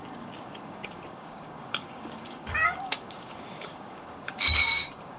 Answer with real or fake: fake